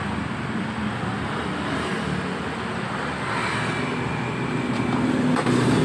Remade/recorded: recorded